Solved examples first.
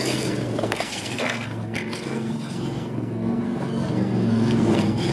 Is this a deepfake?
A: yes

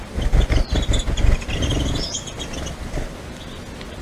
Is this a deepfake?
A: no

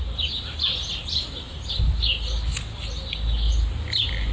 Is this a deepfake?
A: no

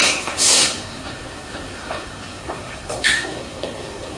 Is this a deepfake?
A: yes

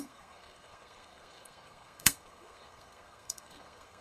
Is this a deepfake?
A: yes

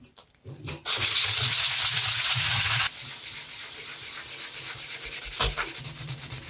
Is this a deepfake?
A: no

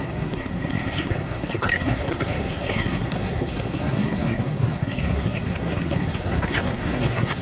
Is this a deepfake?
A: yes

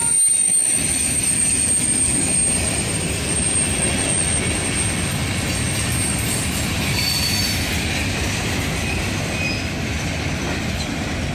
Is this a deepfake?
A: no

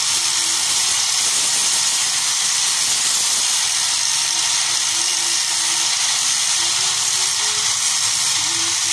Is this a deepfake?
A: no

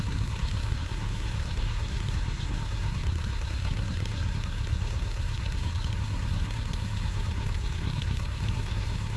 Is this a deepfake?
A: yes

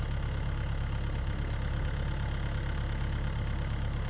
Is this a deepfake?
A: no